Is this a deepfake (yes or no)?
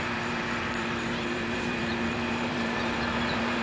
yes